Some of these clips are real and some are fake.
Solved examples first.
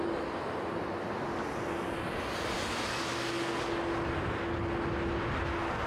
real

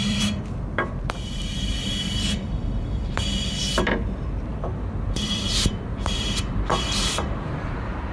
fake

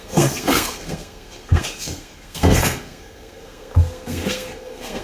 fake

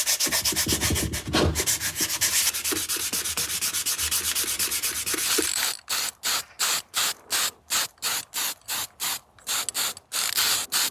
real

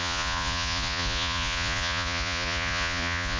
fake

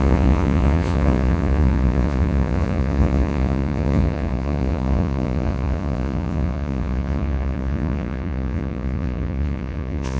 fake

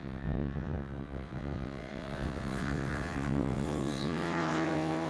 fake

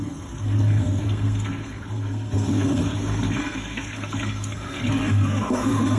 fake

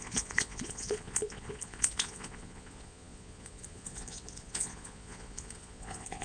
fake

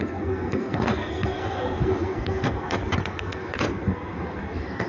fake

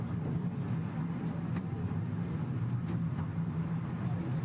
real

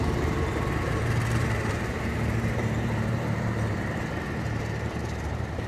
fake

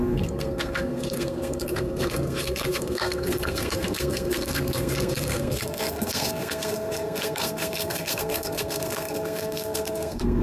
fake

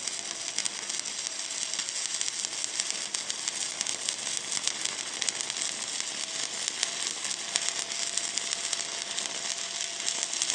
real